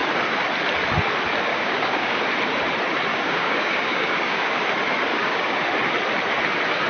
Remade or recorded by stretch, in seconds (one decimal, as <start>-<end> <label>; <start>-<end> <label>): 0.0-1.5 recorded; 1.5-2.2 remade; 2.2-3.1 recorded; 3.1-4.6 remade; 4.6-5.1 recorded; 5.1-5.6 remade; 5.6-6.9 recorded